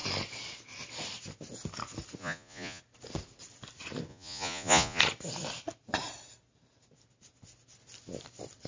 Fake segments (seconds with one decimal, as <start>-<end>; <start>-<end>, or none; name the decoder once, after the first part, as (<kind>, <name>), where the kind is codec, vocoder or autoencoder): 2.2-2.8 (vocoder, Vocos); 4.1-5.0